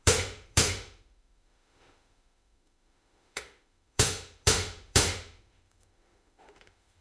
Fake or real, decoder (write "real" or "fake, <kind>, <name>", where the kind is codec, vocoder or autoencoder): fake, autoencoder, DAC-VAE